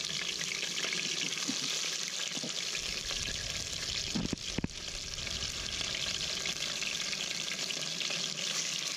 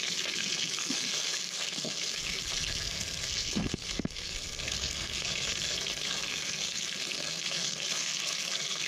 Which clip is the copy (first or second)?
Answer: second